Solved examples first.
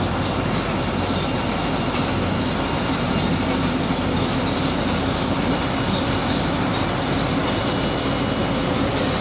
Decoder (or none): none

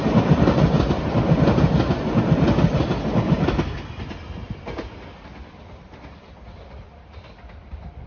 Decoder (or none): none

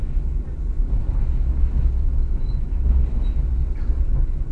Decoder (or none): none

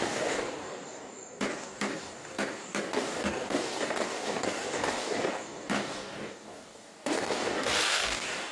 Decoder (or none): codec, DAC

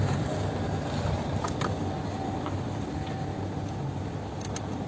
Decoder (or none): none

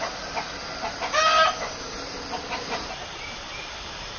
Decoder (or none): none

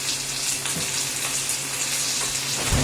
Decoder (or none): none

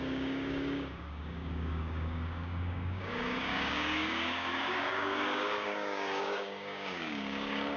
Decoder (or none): codec, DAC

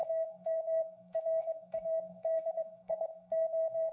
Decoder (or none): codec, DAC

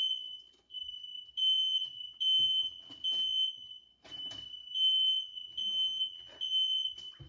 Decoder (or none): none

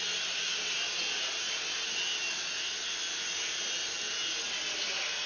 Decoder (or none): none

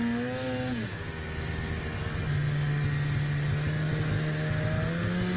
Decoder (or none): none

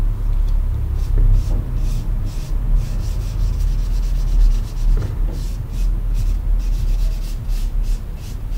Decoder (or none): none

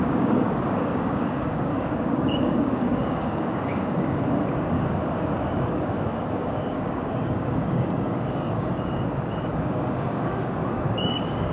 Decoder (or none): codec, DAC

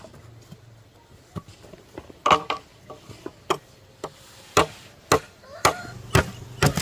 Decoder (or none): none